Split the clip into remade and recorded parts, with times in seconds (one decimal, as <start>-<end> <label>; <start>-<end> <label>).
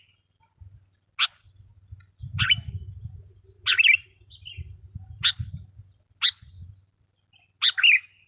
0.0-8.3 recorded